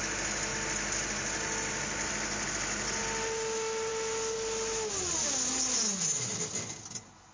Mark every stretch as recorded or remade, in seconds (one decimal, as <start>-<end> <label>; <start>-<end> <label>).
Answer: 0.0-7.3 recorded